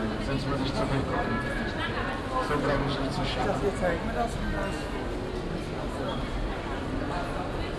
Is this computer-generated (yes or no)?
no